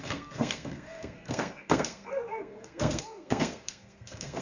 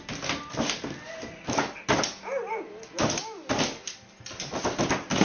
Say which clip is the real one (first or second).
second